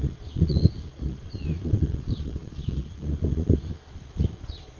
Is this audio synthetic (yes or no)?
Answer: yes